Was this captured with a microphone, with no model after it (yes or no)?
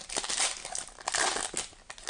yes